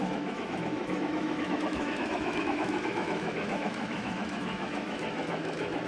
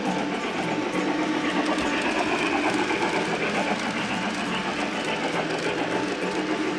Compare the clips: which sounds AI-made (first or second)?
first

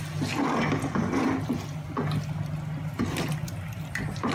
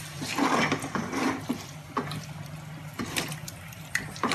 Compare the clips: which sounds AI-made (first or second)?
second